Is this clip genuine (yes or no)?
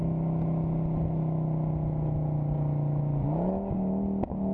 yes